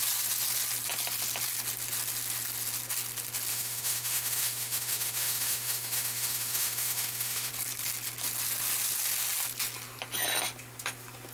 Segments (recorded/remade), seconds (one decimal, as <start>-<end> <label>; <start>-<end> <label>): 0.0-3.5 recorded; 3.5-7.5 remade; 7.5-11.3 recorded